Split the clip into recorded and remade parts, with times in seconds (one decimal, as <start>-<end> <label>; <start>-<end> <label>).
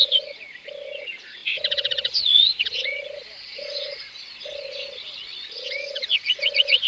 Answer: 0.0-6.9 remade